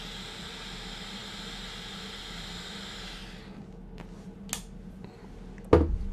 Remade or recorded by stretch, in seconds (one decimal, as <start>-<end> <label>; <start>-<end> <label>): 0.0-6.1 recorded